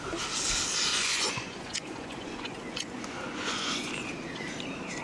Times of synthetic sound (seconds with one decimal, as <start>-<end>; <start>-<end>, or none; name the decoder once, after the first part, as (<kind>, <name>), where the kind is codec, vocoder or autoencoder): 0.9-3.9 (vocoder, Vocos)